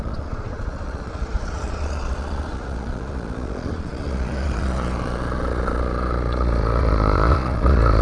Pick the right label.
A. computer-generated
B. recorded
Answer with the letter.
A